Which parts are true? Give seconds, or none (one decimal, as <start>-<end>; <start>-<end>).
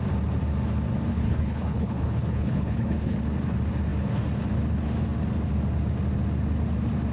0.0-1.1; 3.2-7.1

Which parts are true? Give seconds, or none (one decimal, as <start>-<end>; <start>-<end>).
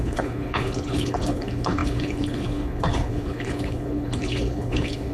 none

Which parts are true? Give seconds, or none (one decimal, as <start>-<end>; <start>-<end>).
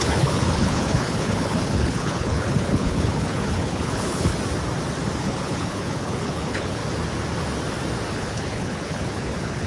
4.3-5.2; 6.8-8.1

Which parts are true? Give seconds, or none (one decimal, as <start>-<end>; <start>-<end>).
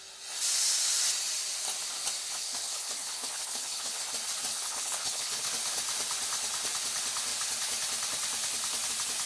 0.0-2.4; 4.0-4.5; 5.5-9.3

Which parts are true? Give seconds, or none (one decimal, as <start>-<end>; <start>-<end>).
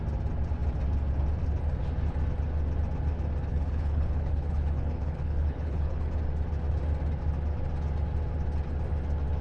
0.0-3.5; 6.1-9.4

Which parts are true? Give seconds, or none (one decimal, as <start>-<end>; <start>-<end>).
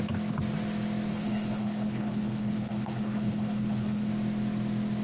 0.0-1.1; 4.1-5.0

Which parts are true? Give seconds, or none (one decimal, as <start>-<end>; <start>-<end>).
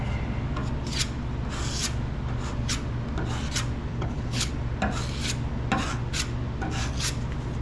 0.0-3.9; 4.5-7.6